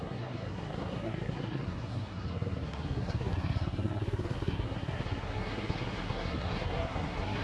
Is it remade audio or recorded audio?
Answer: remade